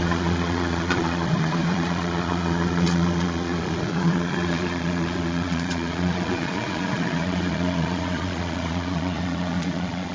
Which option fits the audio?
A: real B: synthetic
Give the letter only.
B